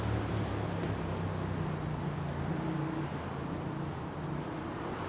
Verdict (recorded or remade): recorded